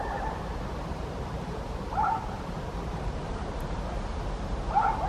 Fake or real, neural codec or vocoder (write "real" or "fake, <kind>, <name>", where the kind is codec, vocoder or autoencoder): fake, vocoder, BigVGAN v2